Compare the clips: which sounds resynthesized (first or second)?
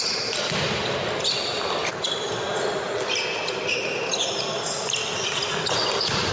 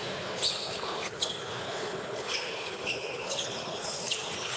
second